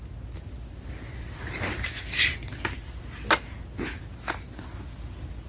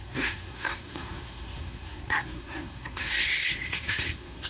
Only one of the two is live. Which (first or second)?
first